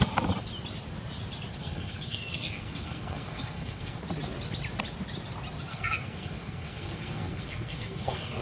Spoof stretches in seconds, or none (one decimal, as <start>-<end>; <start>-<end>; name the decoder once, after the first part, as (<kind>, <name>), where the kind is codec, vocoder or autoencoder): 1.6-4.0 (codec, SNAC); 5.7-8.4